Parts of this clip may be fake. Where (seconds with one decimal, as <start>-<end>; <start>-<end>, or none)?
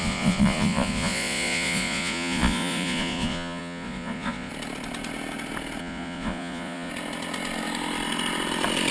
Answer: 0.0-4.5; 5.8-6.9